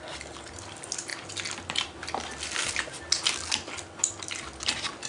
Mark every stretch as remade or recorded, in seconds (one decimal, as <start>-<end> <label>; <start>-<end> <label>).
0.0-5.1 recorded